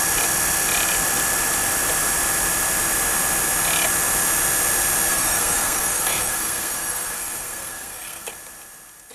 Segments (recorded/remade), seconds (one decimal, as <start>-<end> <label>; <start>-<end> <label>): 0.0-5.1 recorded; 5.1-8.3 remade; 8.3-9.1 recorded